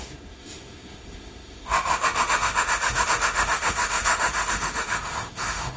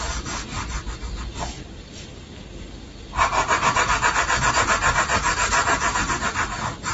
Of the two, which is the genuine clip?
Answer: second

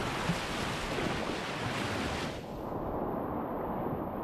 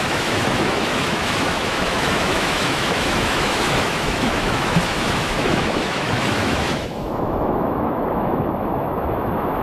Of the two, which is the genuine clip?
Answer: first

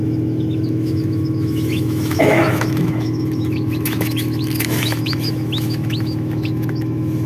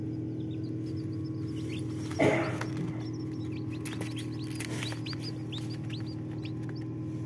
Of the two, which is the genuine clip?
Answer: second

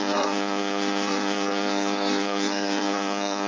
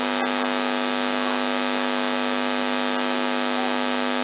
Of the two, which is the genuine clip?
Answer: second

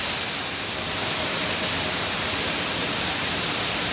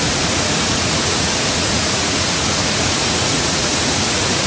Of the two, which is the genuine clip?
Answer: first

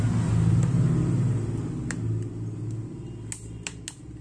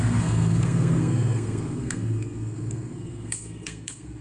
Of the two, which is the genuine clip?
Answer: first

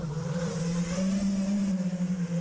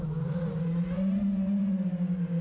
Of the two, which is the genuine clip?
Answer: second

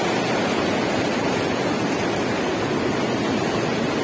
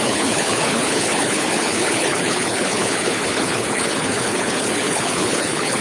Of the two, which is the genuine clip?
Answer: first